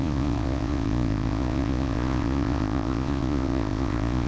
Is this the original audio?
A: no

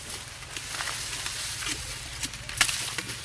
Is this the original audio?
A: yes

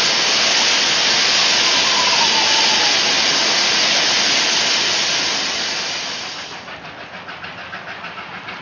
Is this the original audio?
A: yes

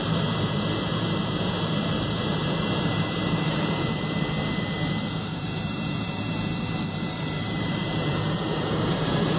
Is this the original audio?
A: no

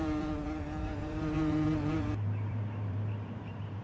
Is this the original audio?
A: no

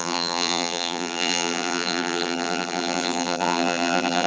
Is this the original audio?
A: no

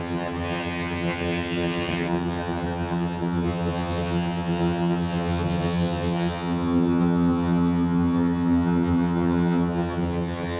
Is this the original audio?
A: no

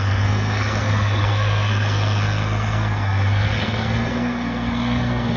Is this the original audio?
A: no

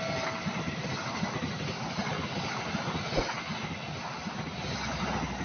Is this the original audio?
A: yes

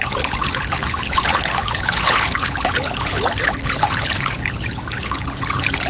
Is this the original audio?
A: no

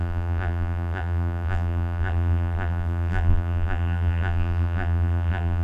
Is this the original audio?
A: no